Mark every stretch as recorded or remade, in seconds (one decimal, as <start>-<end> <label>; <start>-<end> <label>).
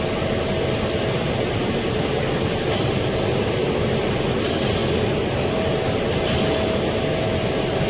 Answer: 0.0-7.9 recorded